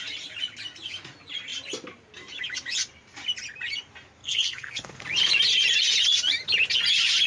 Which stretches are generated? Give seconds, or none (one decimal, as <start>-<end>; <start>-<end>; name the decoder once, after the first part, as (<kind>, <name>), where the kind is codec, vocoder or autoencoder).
4.2-5.0 (codec, SNAC)